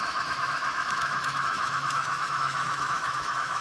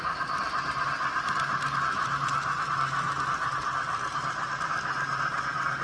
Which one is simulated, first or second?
first